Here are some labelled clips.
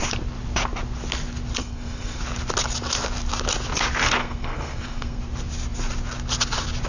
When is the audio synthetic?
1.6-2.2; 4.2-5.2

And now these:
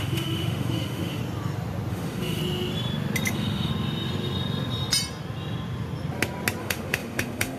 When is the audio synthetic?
0.0-1.2; 1.9-2.4; 3.3-3.7; 6.6-7.6

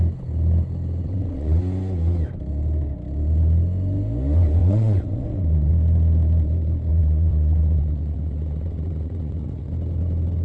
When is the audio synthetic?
1.0-1.6; 4.6-5.7; 6.9-9.7

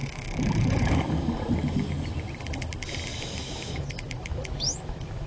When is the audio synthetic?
0.0-1.0; 3.1-5.3